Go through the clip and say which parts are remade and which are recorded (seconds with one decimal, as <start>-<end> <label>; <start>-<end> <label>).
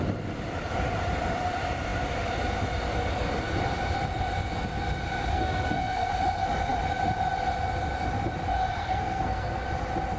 0.0-5.3 recorded; 5.3-6.1 remade; 6.1-8.7 recorded; 8.7-9.6 remade; 9.6-10.2 recorded